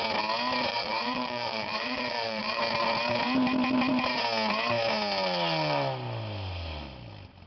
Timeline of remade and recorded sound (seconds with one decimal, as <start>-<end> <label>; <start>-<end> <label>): 0.0-0.7 recorded; 0.7-2.6 remade; 2.6-7.5 recorded